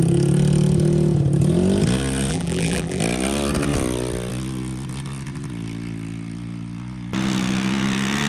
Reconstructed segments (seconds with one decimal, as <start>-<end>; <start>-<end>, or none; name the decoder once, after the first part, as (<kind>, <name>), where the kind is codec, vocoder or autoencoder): 2.3-3.0 (vocoder, BigVGAN v2)